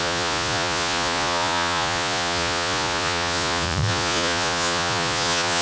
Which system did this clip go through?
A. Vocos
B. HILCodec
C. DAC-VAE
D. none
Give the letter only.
A